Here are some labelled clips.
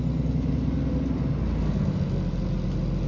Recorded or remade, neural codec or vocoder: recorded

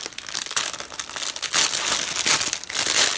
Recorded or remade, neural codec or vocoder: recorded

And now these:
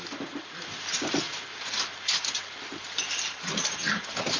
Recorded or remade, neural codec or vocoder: recorded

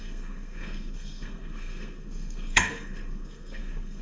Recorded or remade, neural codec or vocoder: remade, codec, SNAC